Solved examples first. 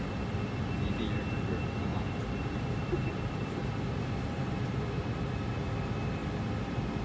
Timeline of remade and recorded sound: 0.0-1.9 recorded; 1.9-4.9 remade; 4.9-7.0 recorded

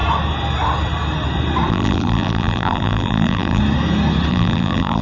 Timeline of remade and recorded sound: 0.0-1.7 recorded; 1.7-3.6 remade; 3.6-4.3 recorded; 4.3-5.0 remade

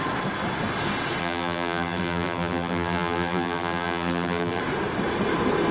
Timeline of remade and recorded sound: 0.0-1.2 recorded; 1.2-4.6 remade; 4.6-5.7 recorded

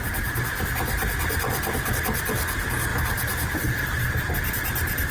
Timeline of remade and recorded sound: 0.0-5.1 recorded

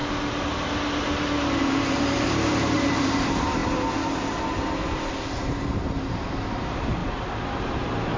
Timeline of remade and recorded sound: 0.0-1.6 recorded; 1.6-3.6 remade; 3.6-5.4 recorded; 5.4-7.0 remade; 7.0-7.5 recorded; 7.5-8.2 remade

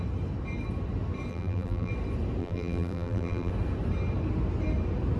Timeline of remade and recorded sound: 0.0-1.3 recorded; 1.3-1.9 remade; 1.9-2.4 recorded; 2.4-3.5 remade; 3.5-5.2 recorded